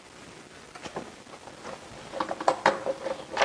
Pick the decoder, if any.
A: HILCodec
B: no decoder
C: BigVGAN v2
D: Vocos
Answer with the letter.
B